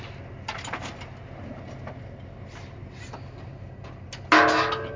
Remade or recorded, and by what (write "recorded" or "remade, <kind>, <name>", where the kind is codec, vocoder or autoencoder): recorded